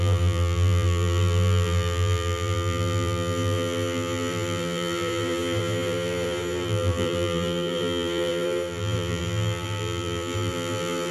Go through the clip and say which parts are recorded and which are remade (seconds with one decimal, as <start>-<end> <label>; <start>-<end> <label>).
0.0-11.1 remade